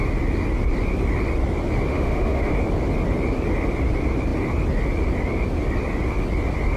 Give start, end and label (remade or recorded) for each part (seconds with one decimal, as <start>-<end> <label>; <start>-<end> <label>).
0.0-1.9 recorded; 1.9-2.5 remade; 2.5-6.8 recorded